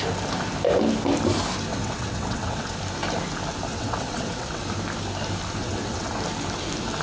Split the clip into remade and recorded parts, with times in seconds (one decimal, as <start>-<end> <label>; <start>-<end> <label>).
0.0-1.7 recorded; 1.7-2.7 remade; 2.7-3.7 recorded; 3.7-4.6 remade; 4.6-5.6 recorded; 5.6-6.1 remade; 6.1-7.0 recorded